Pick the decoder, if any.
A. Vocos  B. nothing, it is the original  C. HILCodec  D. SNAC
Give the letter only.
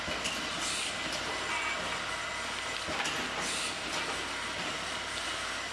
B